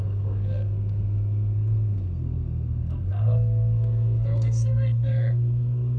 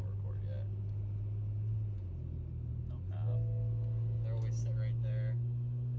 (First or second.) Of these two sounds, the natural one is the second